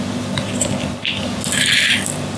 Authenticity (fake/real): real